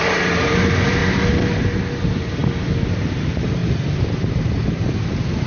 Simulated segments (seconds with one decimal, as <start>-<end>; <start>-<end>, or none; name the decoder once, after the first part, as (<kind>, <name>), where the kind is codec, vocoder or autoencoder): 0.0-1.0 (vocoder, BigVGAN v2); 2.0-2.4; 3.0-5.5